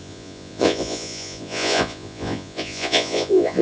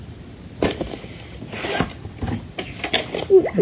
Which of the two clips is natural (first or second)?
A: second